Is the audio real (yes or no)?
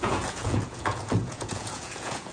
no